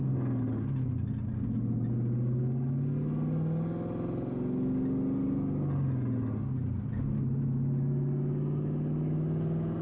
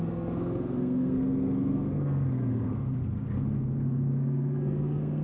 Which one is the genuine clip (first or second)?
first